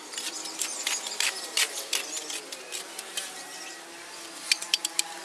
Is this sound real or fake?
fake